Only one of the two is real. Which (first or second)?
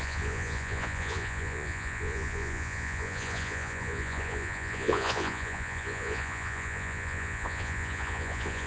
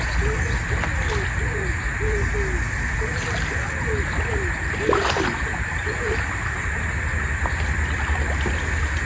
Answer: second